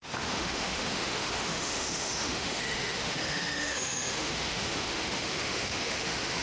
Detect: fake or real fake